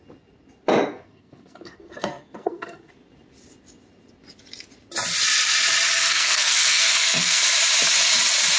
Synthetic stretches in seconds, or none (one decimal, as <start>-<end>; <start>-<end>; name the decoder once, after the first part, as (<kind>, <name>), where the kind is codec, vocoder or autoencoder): 0.9-2.9 (codec, SNAC); 6.0-7.4